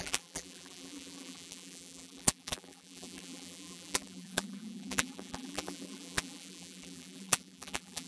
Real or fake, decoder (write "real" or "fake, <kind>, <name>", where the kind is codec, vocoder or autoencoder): fake, vocoder, BigVGAN v2